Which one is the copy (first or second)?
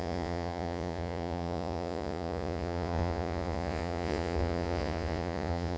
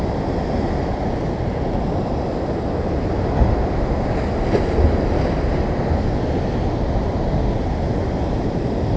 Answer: first